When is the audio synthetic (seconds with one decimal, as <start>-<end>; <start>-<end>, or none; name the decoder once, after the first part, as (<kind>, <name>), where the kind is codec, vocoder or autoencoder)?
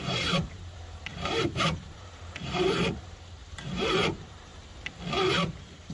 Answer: 0.0-4.5 (vocoder, BigVGAN v2); 5.2-5.9